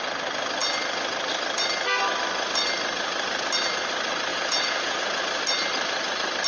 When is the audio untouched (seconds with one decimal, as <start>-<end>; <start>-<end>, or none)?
0.0-4.3; 5.2-6.5

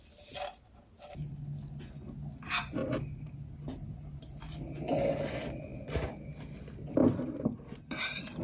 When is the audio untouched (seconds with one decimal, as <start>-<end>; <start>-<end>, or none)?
0.0-7.0

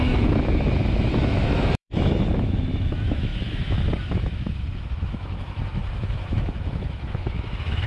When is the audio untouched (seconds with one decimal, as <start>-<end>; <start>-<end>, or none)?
none